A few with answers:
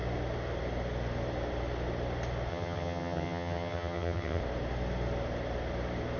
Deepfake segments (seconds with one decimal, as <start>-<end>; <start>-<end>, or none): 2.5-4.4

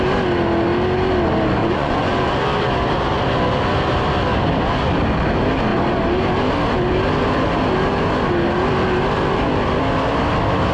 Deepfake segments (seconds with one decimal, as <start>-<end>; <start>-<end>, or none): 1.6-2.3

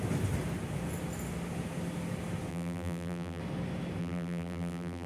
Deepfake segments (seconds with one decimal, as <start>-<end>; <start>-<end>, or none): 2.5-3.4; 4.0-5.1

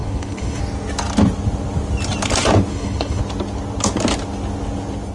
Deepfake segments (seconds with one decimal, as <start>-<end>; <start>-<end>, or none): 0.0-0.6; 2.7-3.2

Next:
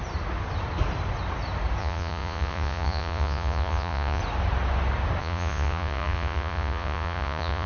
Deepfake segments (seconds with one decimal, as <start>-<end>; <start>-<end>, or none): 1.8-4.2; 5.2-7.7